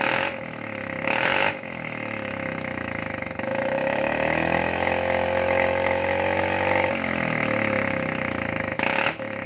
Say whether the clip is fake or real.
fake